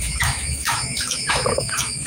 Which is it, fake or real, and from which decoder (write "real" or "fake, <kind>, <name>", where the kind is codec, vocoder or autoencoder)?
fake, autoencoder, DAC-VAE